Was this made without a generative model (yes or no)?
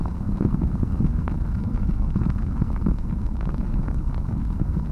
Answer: no